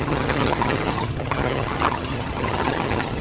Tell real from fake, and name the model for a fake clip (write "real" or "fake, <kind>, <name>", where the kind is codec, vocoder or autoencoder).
fake, vocoder, HiFi-GAN